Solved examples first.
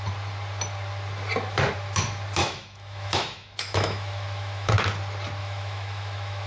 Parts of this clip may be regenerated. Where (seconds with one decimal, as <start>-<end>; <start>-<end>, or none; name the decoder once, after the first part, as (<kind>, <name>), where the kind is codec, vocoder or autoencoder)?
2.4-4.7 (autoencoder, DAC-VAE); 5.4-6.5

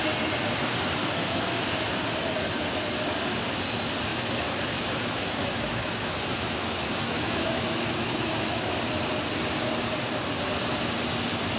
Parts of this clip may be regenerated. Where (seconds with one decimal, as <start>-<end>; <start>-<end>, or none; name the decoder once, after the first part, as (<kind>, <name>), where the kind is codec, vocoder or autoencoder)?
1.0-1.7 (autoencoder, DAC-VAE); 4.1-8.7

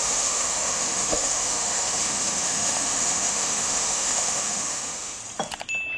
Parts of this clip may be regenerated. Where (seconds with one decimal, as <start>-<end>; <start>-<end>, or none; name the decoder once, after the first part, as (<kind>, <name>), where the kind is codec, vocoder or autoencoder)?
0.0-5.2 (autoencoder, DAC-VAE)